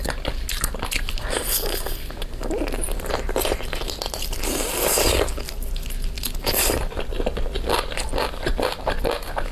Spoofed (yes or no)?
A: no